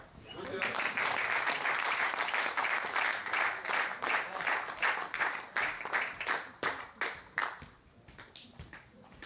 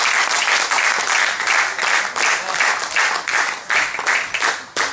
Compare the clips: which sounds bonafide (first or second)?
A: second